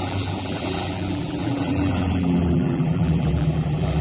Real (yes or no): no